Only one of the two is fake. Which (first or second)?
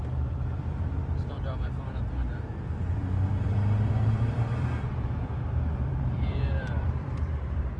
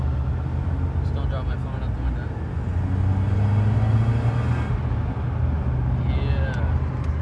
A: first